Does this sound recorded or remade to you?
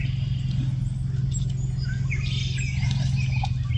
recorded